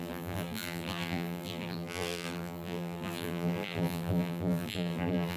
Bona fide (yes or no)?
no